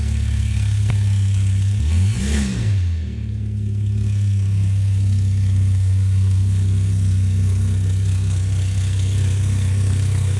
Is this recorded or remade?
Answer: remade